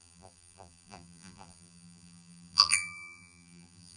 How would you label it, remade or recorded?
remade